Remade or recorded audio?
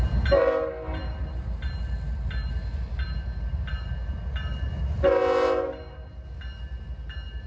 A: recorded